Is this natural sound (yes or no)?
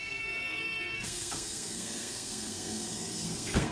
no